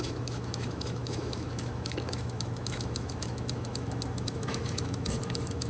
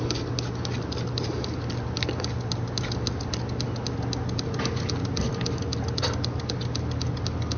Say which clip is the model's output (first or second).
first